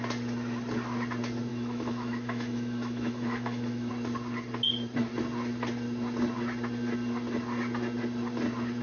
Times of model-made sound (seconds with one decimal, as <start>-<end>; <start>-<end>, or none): 1.5-3.9